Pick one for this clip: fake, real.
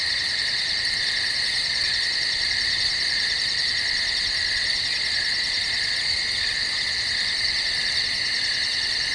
real